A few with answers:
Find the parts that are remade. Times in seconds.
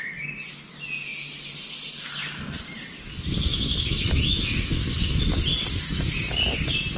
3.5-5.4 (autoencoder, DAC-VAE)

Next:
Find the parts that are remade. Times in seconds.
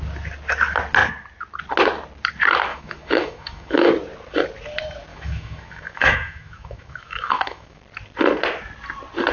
2.7-3.9 (autoencoder, DAC-VAE); 5.1-7.8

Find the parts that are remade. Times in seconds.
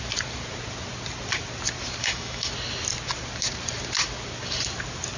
2.0-2.5 (autoencoder, DAC-VAE)